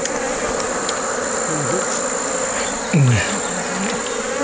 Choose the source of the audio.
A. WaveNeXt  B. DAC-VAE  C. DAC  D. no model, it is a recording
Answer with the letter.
D